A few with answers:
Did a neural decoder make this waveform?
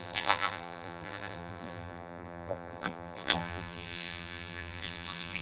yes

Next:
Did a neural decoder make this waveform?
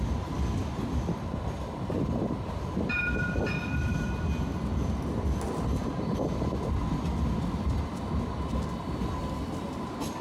no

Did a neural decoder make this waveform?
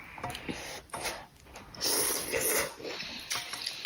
yes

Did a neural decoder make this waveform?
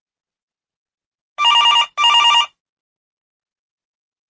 no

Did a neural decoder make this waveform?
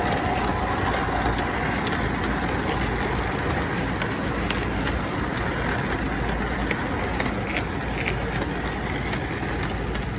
no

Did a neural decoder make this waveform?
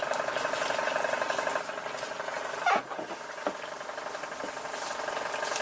no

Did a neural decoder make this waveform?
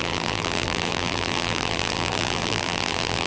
yes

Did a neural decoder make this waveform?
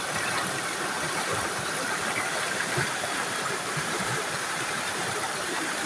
yes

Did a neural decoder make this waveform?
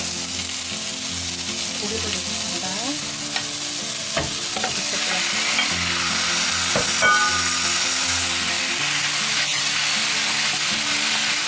no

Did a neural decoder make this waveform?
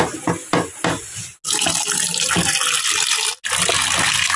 no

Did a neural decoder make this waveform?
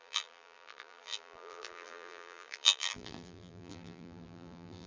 yes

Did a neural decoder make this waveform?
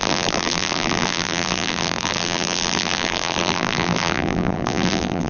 yes